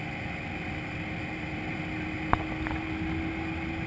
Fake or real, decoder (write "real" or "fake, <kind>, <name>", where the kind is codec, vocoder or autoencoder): real